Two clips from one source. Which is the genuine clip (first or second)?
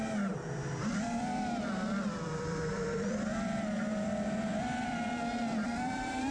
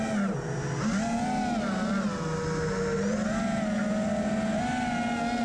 second